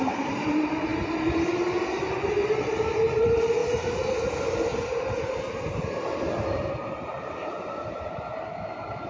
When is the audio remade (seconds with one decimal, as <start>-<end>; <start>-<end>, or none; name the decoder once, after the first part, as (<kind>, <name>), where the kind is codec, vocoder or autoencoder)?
0.0-0.9 (vocoder, BigVGAN v2); 2.4-3.6; 6.5-9.1